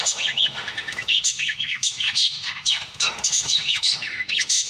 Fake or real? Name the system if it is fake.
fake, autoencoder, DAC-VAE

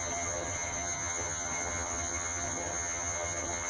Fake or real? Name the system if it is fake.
fake, vocoder, HiFi-GAN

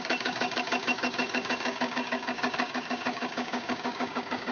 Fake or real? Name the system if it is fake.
fake, codec, DAC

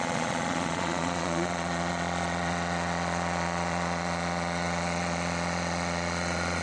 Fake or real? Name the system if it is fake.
fake, vocoder, Vocos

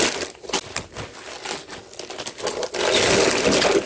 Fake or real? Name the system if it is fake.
real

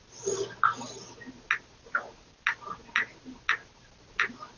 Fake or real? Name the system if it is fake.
real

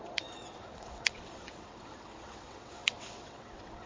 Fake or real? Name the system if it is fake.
fake, vocoder, WaveNeXt